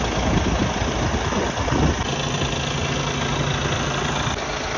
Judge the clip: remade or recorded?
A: recorded